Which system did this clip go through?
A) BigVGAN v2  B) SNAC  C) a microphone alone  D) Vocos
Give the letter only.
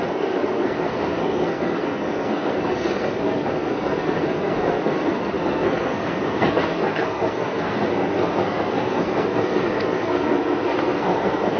B